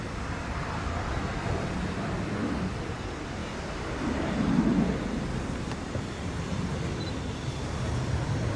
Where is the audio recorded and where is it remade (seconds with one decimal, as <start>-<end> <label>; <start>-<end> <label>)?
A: 0.0-3.4 recorded; 3.4-4.6 remade; 4.6-8.6 recorded

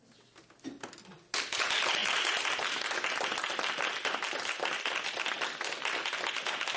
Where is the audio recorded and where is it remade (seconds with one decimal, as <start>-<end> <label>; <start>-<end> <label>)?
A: 0.0-6.8 recorded

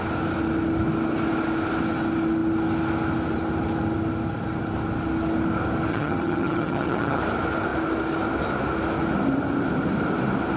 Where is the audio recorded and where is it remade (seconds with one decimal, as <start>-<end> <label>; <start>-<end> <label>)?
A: 0.0-5.9 recorded; 5.9-7.2 remade; 7.2-10.6 recorded

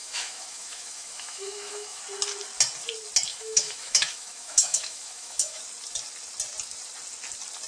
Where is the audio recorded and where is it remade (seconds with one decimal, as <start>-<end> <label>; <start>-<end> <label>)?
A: 0.0-2.0 remade; 2.0-3.3 recorded; 3.3-5.6 remade; 5.6-7.7 recorded

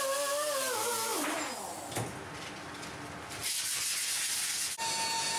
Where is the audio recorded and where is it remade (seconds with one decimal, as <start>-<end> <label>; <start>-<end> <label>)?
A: 0.0-5.4 recorded

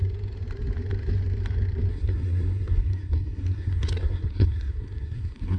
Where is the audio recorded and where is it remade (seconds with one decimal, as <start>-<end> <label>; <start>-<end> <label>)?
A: 0.0-1.9 recorded; 1.9-5.6 remade